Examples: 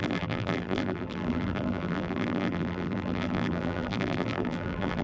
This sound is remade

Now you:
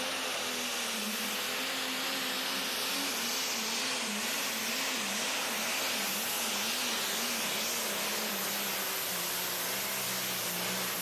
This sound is recorded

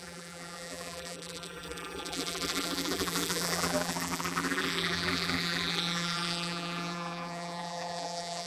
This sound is remade